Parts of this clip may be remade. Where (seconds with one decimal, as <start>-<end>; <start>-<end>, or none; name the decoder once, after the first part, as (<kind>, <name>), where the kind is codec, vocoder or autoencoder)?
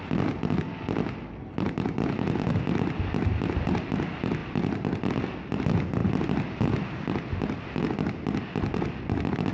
4.4-5.1 (vocoder, BigVGAN v2); 6.0-6.6